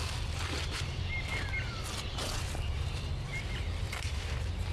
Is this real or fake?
real